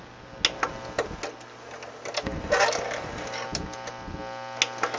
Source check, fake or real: real